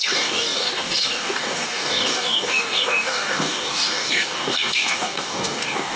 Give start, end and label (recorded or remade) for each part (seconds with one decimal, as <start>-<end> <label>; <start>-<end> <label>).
0.0-6.0 remade